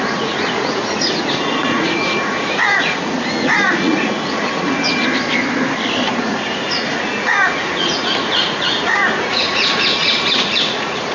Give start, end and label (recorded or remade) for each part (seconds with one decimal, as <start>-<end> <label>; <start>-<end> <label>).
0.0-5.0 remade; 5.0-6.2 recorded; 6.2-11.1 remade